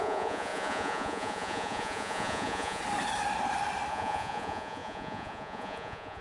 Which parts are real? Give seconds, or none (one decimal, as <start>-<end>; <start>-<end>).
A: 2.8-3.9